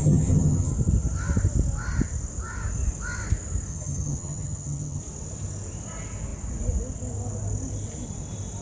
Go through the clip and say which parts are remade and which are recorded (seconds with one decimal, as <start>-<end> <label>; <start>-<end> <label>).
0.0-0.7 remade; 0.7-3.7 recorded; 3.7-5.0 remade; 5.0-8.6 recorded